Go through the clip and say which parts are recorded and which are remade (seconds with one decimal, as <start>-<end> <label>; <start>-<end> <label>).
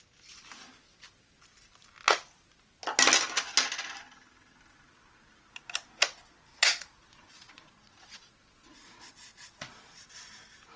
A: 0.0-6.5 recorded; 6.5-10.1 remade; 10.1-10.8 recorded